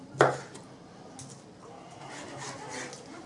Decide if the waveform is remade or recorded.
recorded